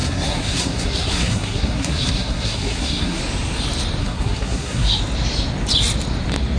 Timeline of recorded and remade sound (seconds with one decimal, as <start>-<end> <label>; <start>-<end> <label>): 0.0-3.2 remade; 3.2-4.0 recorded; 4.0-5.0 remade; 5.0-6.6 recorded